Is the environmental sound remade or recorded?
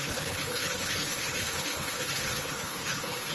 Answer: remade